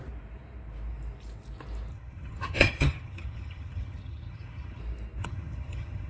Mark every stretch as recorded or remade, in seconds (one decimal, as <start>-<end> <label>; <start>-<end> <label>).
0.0-1.9 recorded; 1.9-4.8 remade; 4.8-5.2 recorded; 5.2-6.1 remade